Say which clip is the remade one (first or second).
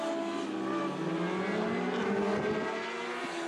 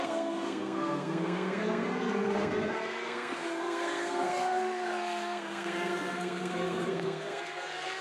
second